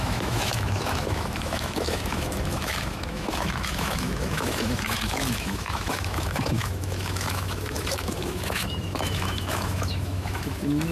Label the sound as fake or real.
fake